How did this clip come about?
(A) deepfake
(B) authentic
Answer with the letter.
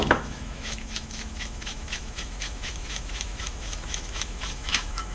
A